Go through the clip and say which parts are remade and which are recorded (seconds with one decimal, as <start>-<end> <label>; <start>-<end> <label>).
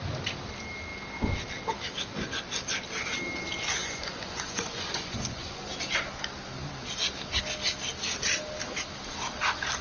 0.0-3.8 recorded; 3.8-5.8 remade; 5.8-9.8 recorded